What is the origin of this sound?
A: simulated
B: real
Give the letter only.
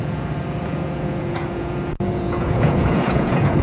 A